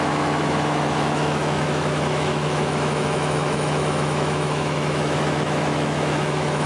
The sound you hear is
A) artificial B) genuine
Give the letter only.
A